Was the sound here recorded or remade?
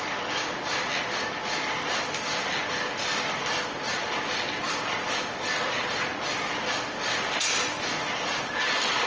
recorded